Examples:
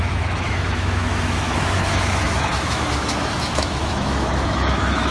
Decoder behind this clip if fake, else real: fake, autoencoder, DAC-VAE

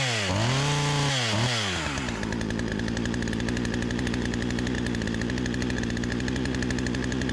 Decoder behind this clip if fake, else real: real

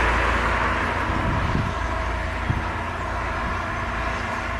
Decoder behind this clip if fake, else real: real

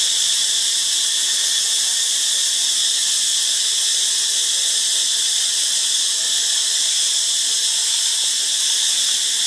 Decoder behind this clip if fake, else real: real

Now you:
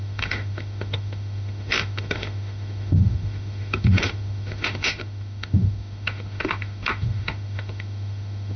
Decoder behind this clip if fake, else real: fake, autoencoder, DAC-VAE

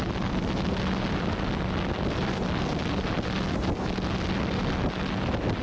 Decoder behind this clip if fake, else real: real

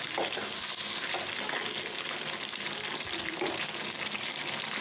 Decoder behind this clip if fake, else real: real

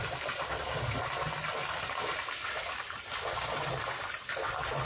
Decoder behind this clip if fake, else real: real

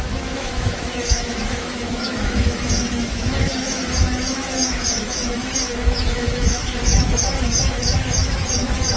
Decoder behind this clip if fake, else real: fake, autoencoder, DAC-VAE